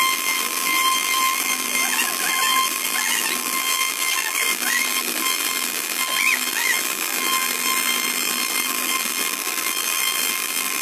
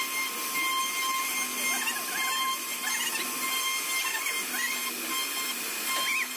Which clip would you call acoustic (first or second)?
second